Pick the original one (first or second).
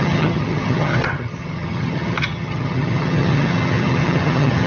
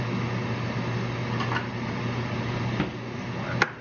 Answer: second